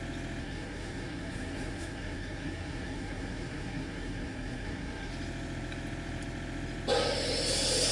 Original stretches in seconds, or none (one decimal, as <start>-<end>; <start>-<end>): 0.0-0.4; 5.1-7.9